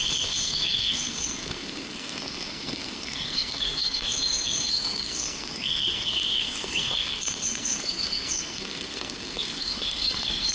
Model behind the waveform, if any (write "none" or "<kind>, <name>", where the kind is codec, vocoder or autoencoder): codec, SNAC